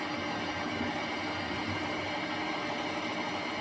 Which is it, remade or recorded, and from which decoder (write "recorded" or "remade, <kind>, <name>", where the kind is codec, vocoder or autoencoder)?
recorded